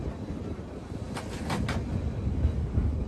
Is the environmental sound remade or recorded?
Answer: recorded